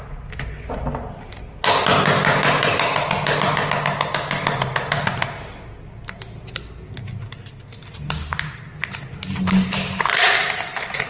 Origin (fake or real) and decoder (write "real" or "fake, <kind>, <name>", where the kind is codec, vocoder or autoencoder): real